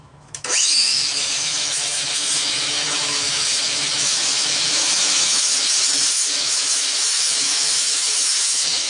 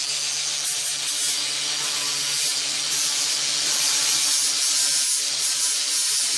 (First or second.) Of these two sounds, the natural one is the second